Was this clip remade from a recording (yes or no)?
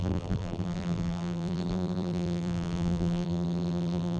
yes